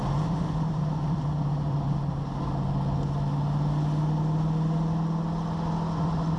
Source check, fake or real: real